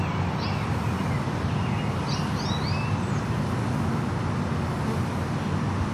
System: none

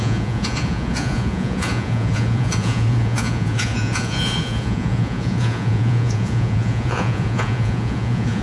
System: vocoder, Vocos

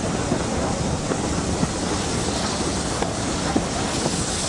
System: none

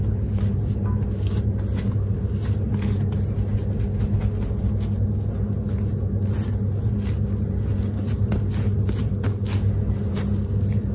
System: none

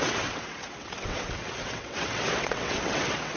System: vocoder, WaveNeXt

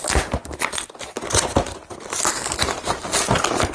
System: none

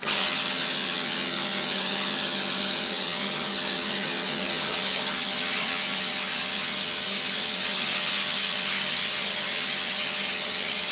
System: vocoder, HiFi-GAN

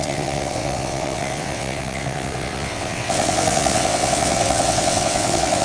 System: vocoder, WaveNeXt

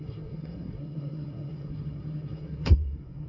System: codec, SNAC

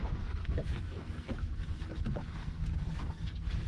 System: codec, SNAC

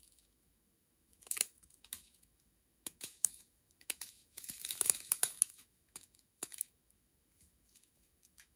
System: autoencoder, DAC-VAE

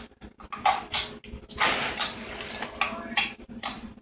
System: none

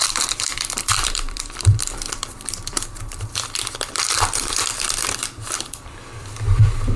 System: vocoder, BigVGAN v2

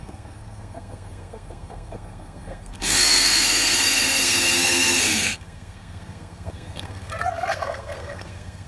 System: codec, SNAC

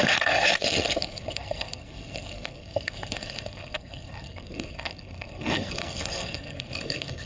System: codec, SNAC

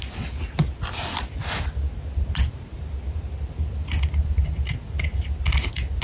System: none